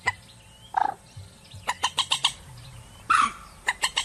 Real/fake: real